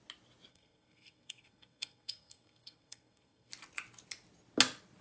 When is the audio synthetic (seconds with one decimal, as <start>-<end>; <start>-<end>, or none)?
0.5-3.5